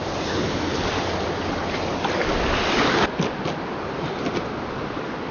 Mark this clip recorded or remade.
remade